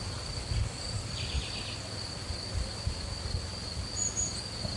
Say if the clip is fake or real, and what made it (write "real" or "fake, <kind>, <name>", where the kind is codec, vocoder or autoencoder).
real